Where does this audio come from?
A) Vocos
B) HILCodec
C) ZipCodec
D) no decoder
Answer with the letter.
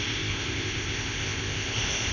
C